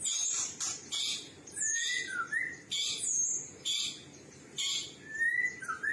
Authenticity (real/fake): fake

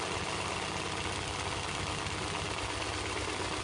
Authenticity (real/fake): real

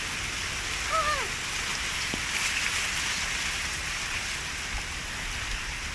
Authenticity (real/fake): real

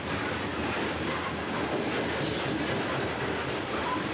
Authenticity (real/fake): real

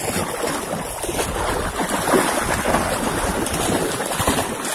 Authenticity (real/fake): real